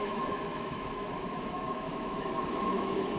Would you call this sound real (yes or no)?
no